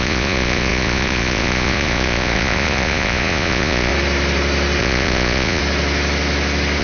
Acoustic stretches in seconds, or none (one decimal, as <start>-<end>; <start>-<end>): 3.9-4.8; 5.6-6.8